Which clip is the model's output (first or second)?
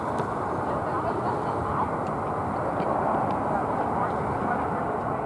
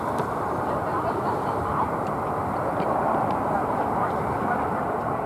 second